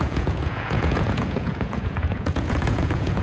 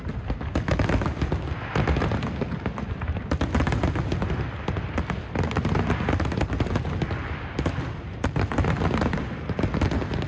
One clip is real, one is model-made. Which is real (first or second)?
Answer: second